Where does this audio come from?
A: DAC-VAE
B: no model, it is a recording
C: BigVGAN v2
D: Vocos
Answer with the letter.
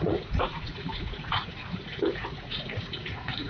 D